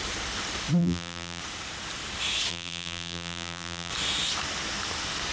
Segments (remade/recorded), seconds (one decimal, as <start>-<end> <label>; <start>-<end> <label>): 0.0-0.8 recorded; 0.8-1.4 remade; 1.4-2.5 recorded; 2.5-3.9 remade; 3.9-5.3 recorded